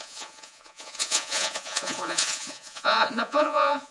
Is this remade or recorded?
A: remade